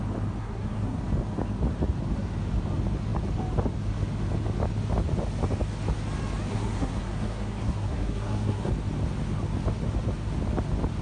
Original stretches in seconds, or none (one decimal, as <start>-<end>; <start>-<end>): 0.0-0.4; 1.0-6.5; 8.7-11.0